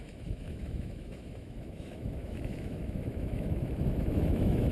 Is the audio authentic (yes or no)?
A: no